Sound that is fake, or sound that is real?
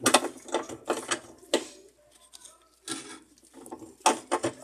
real